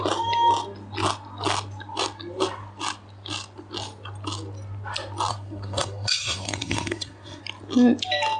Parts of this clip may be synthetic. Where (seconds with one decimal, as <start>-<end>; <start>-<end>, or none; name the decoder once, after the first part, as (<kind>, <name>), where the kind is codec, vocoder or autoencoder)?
5.3-7.4 (codec, SNAC)